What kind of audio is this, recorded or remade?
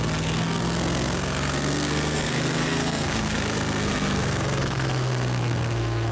remade